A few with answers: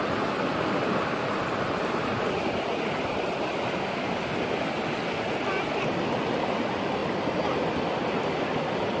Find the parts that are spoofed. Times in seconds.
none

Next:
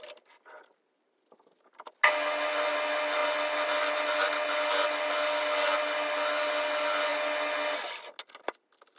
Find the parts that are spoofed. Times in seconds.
none

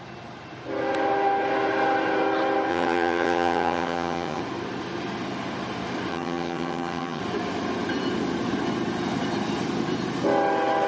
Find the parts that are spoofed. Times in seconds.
2.7-4.4 (vocoder, HiFi-GAN); 6.1-7.2